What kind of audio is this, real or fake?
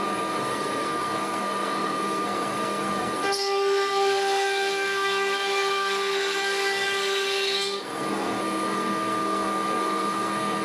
fake